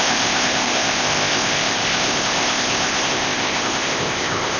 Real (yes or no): no